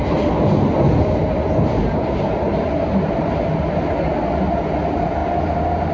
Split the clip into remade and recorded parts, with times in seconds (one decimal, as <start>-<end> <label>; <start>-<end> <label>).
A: 0.0-5.9 recorded